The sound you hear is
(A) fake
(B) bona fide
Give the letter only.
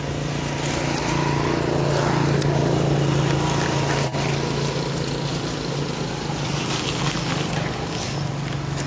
B